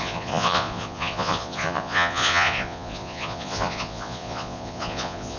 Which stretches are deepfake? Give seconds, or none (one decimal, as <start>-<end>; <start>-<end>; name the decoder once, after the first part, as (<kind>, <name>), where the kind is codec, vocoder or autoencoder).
0.0-5.4 (vocoder, Vocos)